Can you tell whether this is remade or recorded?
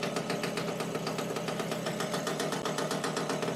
recorded